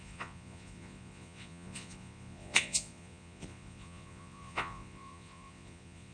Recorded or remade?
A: remade